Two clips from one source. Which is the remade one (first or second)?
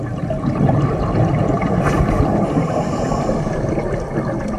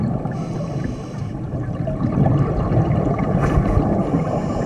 second